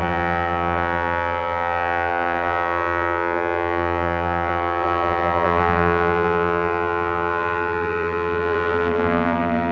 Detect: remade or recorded remade